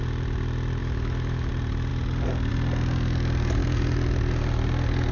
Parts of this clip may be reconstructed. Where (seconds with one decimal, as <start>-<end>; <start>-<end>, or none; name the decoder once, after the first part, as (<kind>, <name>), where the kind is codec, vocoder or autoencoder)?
0.8-1.5 (autoencoder, DAC-VAE)

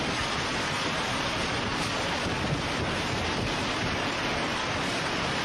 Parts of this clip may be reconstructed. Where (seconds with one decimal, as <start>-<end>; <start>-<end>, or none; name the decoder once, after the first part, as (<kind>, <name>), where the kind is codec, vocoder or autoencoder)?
0.0-5.4 (vocoder, BigVGAN v2)